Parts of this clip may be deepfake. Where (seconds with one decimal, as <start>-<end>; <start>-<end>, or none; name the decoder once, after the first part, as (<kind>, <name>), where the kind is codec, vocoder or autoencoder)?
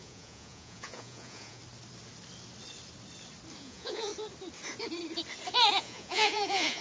0.0-1.6 (vocoder, Vocos); 3.6-4.1; 5.7-6.8